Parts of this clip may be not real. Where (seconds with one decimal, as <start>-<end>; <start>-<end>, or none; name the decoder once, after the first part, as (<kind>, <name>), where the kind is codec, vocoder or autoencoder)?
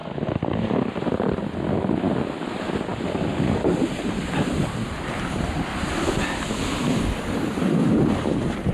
0.0-1.4 (vocoder, BigVGAN v2); 2.9-4.6; 7.8-8.7